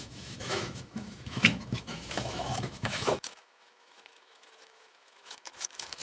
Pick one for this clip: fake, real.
fake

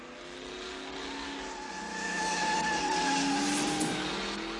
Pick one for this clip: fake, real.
real